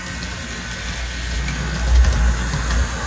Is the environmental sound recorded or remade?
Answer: recorded